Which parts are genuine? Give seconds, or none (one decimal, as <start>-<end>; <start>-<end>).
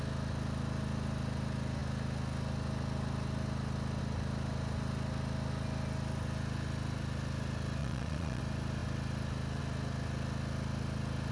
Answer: 0.0-7.8; 8.4-11.3